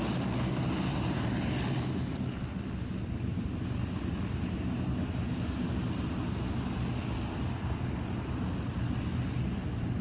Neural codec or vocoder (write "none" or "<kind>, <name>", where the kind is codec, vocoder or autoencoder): none